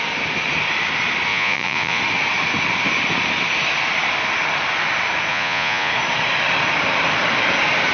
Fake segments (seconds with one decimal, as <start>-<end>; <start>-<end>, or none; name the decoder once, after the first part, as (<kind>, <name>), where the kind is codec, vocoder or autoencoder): 1.3-2.0 (vocoder, Vocos); 5.3-5.9